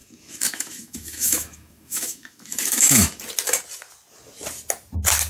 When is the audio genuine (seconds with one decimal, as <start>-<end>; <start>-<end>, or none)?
3.2-5.3